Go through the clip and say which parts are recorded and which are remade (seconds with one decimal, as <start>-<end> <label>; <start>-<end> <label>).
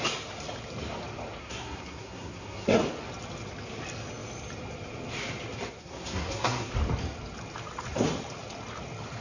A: 0.0-1.4 recorded; 1.4-2.8 remade; 2.8-5.8 recorded; 5.8-6.7 remade; 6.7-9.2 recorded